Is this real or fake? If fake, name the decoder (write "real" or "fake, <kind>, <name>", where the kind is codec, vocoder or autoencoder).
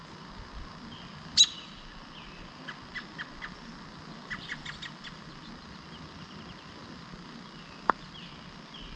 real